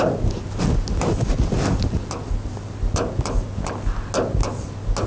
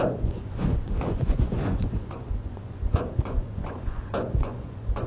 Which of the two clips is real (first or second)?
first